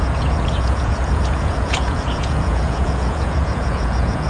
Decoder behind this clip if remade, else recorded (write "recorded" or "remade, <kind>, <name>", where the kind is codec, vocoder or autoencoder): remade, vocoder, Vocos